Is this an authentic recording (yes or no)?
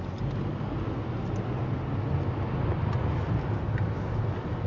yes